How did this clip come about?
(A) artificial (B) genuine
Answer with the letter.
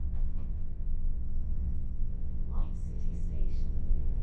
A